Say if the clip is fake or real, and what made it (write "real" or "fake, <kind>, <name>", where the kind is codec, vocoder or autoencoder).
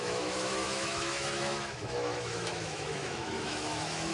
fake, autoencoder, DAC-VAE